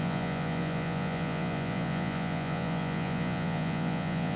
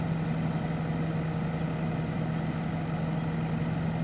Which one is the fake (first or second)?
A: first